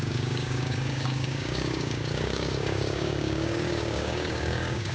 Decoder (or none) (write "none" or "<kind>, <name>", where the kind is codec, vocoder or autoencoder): codec, DAC